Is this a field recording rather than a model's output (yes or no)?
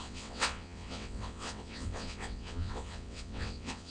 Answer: no